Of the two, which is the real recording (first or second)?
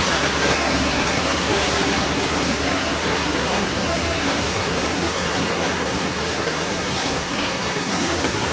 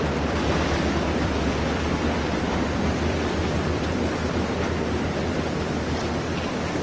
second